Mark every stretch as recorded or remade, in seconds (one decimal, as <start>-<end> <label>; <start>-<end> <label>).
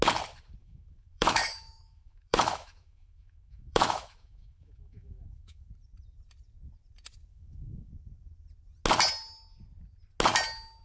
0.0-0.6 recorded; 0.6-5.7 remade; 5.7-7.3 recorded; 7.3-7.9 remade; 7.9-10.8 recorded